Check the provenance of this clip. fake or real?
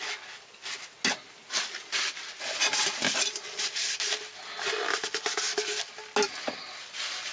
real